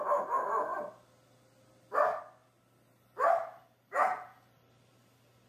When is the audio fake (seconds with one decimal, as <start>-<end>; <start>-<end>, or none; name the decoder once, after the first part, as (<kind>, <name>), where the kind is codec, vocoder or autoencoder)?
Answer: none